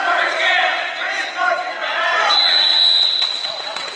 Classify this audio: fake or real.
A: fake